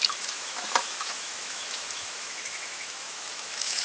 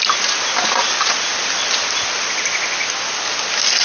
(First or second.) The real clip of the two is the second